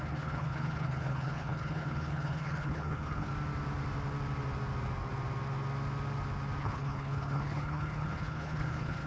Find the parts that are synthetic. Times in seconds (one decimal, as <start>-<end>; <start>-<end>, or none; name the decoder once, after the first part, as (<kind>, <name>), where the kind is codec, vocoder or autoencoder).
0.0-3.3 (codec, HILCodec); 6.6-9.1